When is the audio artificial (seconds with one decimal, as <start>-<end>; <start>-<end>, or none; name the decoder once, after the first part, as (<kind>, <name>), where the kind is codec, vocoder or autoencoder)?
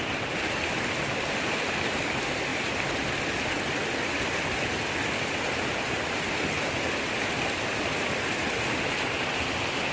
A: none